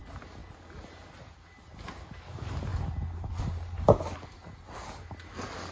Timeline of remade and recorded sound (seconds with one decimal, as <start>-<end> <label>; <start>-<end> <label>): 0.0-5.7 recorded

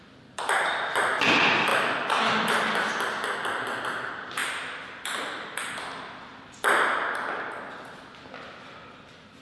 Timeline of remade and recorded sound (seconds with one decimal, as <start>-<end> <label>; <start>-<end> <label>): 0.0-9.4 recorded

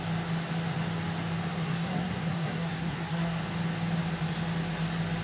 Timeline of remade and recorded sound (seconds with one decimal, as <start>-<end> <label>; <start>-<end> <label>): 0.0-1.5 recorded; 1.5-3.4 remade; 3.4-5.2 recorded